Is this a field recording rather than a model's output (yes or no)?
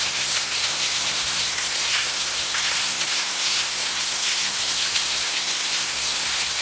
no